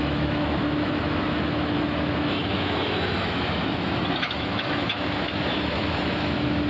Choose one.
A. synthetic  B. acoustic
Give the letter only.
A